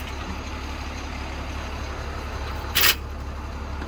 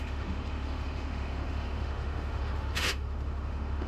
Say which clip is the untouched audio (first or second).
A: first